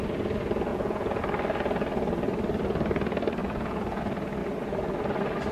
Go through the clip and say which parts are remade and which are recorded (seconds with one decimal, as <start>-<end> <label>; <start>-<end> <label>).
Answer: 0.0-0.7 recorded; 0.7-1.2 remade; 1.2-3.4 recorded; 3.4-4.0 remade; 4.0-5.5 recorded